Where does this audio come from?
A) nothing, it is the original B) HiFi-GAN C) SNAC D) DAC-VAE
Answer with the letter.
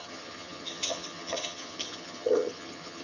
B